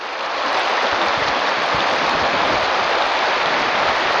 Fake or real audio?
real